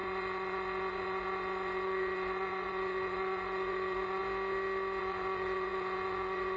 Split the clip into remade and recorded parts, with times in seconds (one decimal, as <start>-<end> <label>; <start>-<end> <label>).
0.0-4.2 remade; 4.2-5.0 recorded; 5.0-6.6 remade